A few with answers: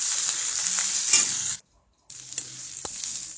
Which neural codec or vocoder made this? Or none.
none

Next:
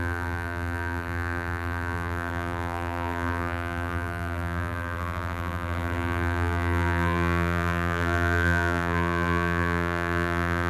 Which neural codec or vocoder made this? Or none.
vocoder, BigVGAN v2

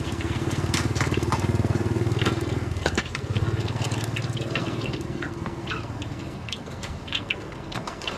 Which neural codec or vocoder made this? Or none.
codec, SNAC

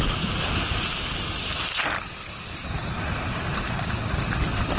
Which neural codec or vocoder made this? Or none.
none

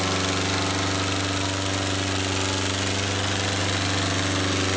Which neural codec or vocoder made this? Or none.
none